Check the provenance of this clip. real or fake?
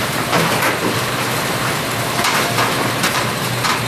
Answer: fake